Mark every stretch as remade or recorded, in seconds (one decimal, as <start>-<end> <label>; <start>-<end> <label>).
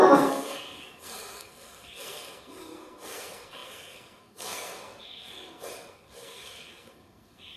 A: 0.0-7.6 remade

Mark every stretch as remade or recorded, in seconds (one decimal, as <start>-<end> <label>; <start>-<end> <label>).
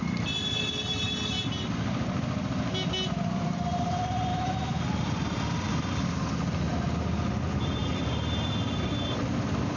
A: 0.0-4.3 recorded; 4.3-4.8 remade; 4.8-9.8 recorded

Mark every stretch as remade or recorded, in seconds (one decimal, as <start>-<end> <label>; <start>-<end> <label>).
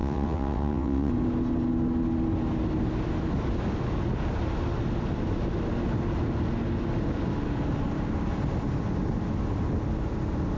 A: 0.0-1.1 remade; 1.1-10.6 recorded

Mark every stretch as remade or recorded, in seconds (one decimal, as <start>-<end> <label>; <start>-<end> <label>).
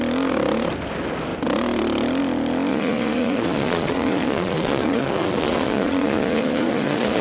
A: 0.0-2.7 recorded; 2.7-7.2 remade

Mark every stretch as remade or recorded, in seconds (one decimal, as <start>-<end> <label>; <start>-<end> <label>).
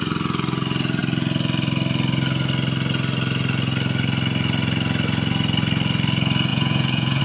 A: 0.0-6.5 recorded; 6.5-7.2 remade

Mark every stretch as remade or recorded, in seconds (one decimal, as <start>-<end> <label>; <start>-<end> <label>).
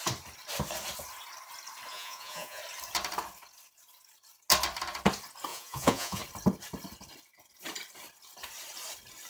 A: 0.0-1.9 recorded; 1.9-2.6 remade; 2.6-5.5 recorded; 5.5-6.2 remade; 6.2-9.3 recorded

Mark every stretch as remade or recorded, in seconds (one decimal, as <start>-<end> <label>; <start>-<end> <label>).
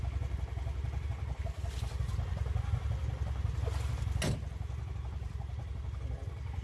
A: 0.0-6.6 recorded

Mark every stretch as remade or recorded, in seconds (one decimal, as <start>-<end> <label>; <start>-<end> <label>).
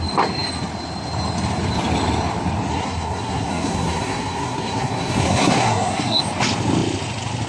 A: 0.0-2.7 recorded; 2.7-6.2 remade; 6.2-7.5 recorded